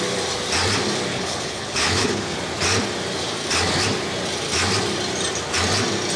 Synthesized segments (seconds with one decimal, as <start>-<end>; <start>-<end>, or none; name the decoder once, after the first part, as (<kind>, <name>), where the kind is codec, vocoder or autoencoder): 1.1-2.4 (codec, HILCodec)